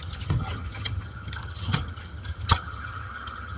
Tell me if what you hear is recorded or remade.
remade